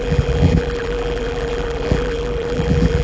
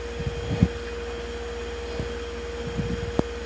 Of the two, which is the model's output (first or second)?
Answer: first